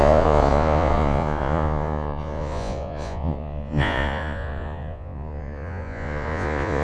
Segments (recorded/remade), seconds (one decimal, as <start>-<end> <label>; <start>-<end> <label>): 0.0-6.8 remade